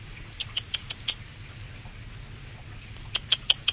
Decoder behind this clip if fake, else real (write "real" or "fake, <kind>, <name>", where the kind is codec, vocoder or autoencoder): real